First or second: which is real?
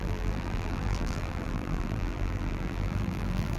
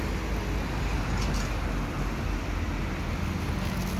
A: second